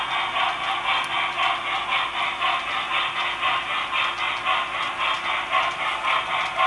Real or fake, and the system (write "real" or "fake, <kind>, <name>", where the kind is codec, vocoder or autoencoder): real